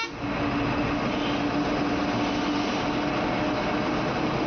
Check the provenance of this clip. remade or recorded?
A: recorded